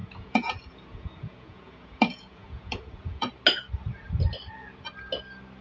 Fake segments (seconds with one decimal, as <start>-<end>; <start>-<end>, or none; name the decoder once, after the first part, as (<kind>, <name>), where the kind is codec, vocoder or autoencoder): 0.0-3.4 (vocoder, Vocos)